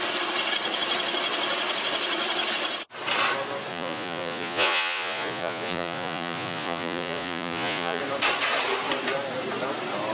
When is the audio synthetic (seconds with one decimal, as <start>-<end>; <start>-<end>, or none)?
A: 3.7-8.0